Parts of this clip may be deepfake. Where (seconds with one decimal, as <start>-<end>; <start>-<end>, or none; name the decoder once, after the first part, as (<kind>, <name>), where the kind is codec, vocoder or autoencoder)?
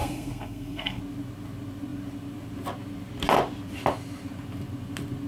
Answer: 0.0-1.0 (codec, SNAC)